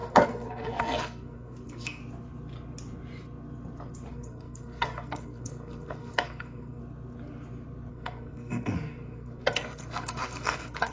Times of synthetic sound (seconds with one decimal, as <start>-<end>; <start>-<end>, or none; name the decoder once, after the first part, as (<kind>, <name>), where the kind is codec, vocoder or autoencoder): 0.0-2.0 (codec, SNAC); 4.1-6.8; 7.9-10.9